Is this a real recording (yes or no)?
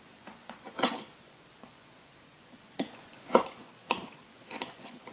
no